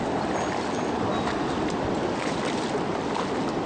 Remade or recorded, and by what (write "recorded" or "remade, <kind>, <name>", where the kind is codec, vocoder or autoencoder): recorded